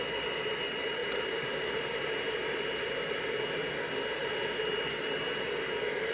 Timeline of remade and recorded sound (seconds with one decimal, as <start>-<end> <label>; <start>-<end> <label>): 0.0-1.0 recorded; 1.0-2.9 remade; 2.9-6.1 recorded